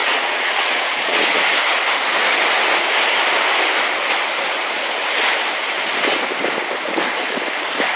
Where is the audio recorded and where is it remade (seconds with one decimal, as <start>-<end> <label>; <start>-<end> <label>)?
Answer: 0.0-1.2 remade; 1.2-8.0 recorded